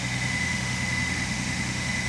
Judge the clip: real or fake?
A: fake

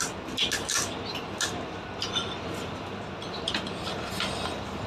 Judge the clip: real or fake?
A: real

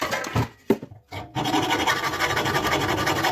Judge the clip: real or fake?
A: real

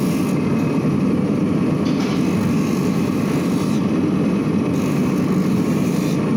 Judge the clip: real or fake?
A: real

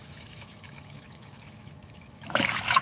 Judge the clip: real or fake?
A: fake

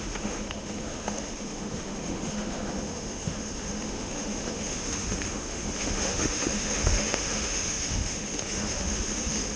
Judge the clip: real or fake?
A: fake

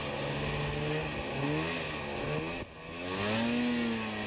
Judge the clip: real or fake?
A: real